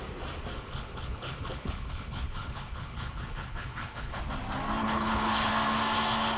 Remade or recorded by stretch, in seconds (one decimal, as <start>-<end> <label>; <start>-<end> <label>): 0.0-0.5 recorded; 0.5-4.2 remade; 4.2-4.8 recorded; 4.8-5.5 remade; 5.5-6.4 recorded